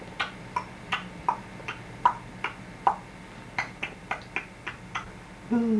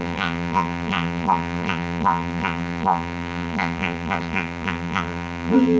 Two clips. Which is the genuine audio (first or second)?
first